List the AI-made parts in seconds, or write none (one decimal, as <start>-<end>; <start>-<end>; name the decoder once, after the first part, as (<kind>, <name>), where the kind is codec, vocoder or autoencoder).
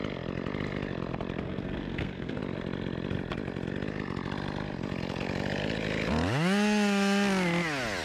1.4-2.4 (codec, SNAC)